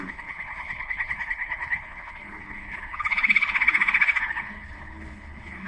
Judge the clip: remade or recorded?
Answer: remade